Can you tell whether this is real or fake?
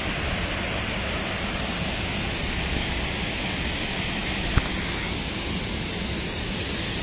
real